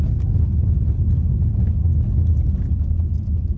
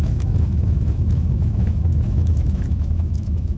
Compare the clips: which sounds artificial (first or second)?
second